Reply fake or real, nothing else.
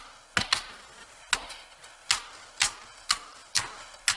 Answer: real